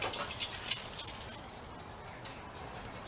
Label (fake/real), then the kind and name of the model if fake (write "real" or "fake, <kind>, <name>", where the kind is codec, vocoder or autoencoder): real